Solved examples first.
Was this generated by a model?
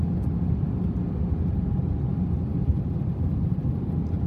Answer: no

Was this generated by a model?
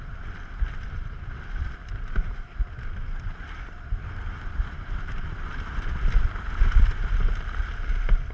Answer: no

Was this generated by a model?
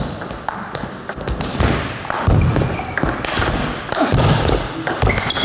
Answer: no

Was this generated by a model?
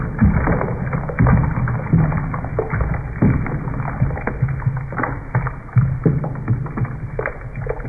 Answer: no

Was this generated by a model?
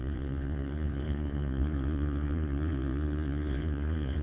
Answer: yes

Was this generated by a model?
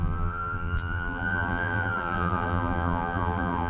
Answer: yes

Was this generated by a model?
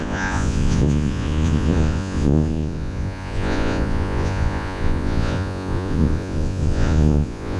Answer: yes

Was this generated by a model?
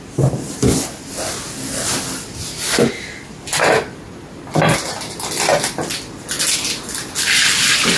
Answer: no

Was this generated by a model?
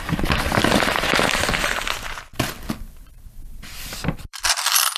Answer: yes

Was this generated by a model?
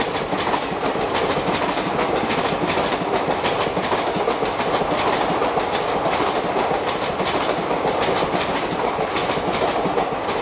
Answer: no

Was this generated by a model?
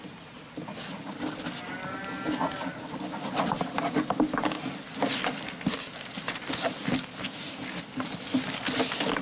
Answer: no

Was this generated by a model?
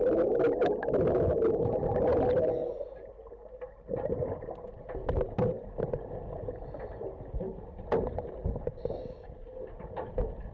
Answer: no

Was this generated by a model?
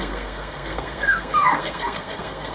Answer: yes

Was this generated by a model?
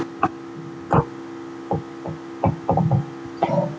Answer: no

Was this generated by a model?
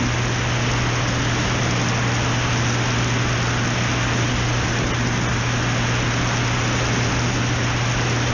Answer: no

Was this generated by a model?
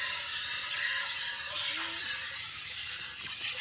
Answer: no